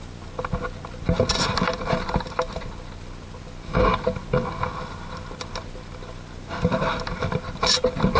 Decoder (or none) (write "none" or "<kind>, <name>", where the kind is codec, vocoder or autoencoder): none